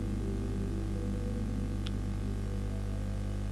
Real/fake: real